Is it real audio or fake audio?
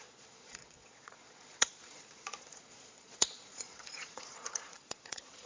fake